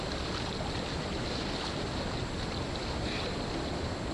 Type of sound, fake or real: real